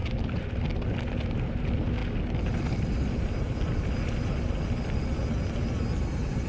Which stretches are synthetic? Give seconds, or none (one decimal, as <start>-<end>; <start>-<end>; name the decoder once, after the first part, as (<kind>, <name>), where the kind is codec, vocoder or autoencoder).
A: none